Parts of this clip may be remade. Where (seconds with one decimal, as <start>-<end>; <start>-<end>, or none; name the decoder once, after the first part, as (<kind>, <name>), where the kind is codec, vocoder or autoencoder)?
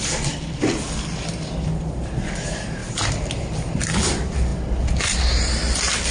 0.0-6.1 (vocoder, BigVGAN v2)